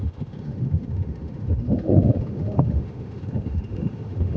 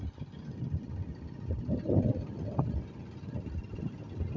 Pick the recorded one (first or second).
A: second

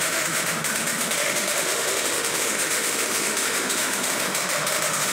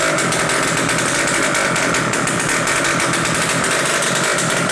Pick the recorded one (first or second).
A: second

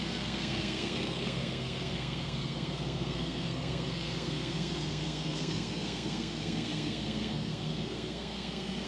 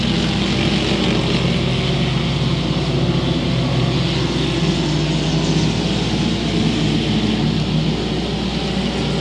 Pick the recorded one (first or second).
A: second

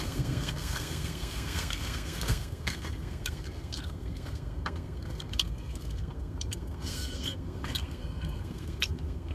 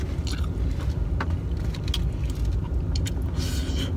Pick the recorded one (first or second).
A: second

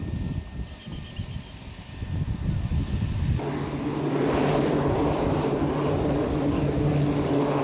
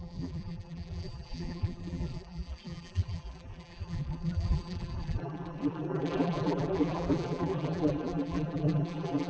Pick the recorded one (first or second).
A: first